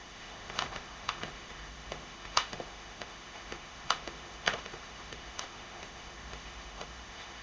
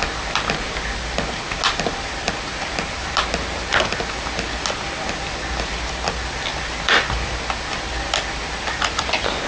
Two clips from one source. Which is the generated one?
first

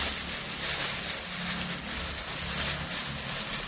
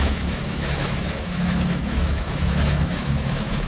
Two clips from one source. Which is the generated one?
second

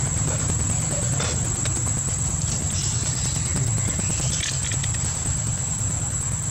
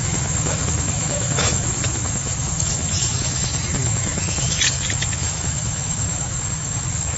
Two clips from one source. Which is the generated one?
second